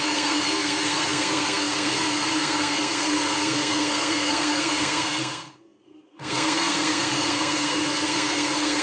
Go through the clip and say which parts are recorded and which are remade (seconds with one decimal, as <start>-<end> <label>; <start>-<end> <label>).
0.0-8.8 remade